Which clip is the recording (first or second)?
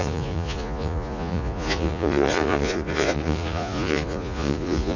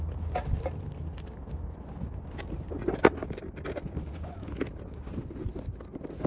second